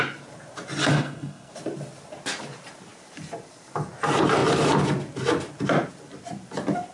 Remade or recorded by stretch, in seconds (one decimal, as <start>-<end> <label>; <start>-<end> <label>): 0.0-0.9 recorded; 0.9-1.5 remade; 1.5-6.9 recorded